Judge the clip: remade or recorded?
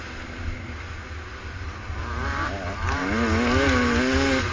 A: recorded